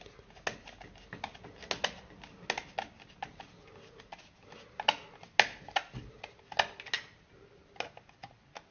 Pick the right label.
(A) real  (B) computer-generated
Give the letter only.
A